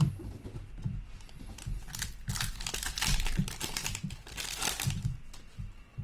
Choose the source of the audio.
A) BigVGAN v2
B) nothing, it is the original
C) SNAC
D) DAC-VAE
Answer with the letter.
B